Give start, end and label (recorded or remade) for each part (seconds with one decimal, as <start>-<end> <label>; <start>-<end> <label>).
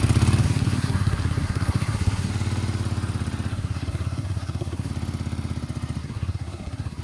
0.0-0.4 recorded; 0.4-2.3 remade; 2.3-3.5 recorded; 3.5-4.9 remade; 4.9-6.0 recorded; 6.0-7.0 remade